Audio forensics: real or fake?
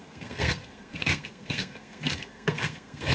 fake